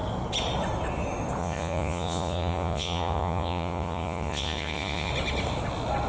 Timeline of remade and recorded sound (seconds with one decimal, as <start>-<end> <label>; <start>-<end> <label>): 0.0-1.4 recorded; 1.4-5.1 remade; 5.1-6.1 recorded